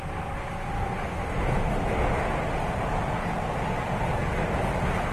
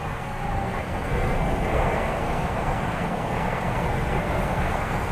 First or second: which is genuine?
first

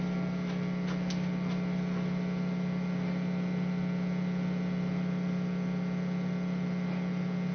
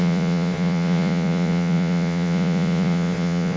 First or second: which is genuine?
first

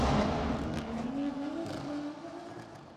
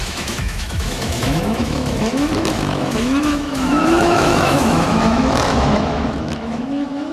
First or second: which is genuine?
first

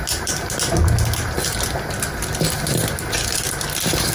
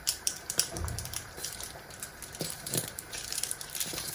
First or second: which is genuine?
first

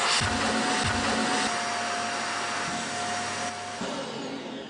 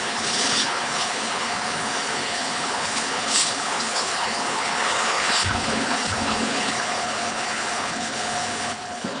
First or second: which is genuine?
first